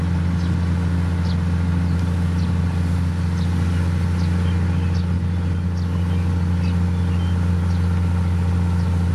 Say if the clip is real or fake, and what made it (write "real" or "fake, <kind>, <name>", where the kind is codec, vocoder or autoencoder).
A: real